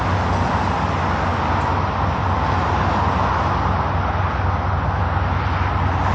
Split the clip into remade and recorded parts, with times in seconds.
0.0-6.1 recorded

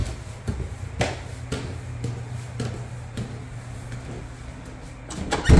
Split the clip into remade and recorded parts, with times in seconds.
0.0-5.6 recorded